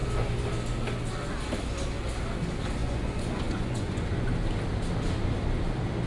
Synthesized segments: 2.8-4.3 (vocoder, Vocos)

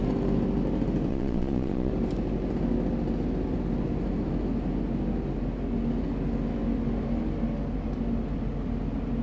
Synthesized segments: 1.1-1.9 (vocoder, Vocos)

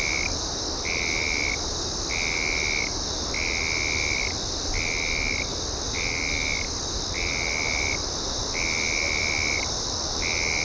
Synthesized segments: none

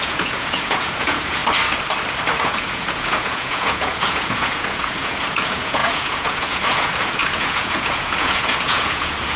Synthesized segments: 0.0-1.4 (vocoder, Vocos); 2.4-9.4

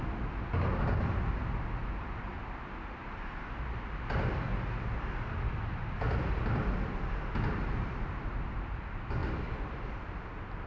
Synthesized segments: none

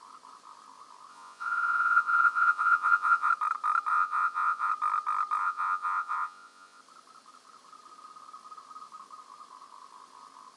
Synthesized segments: 1.1-3.3 (vocoder, Vocos); 3.9-4.7; 5.4-6.8

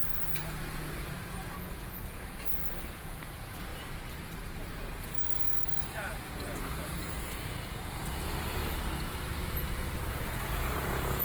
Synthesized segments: 0.0-3.7 (vocoder, Vocos); 4.4-8.6; 10.1-11.2